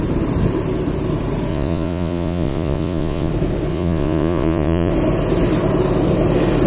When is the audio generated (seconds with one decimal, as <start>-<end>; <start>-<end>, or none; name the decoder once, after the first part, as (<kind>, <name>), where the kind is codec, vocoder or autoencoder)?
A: 1.5-3.3 (vocoder, Vocos); 3.7-4.9